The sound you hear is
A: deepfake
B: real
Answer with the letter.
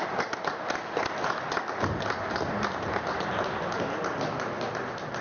B